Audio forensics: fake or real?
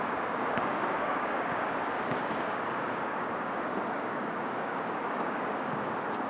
fake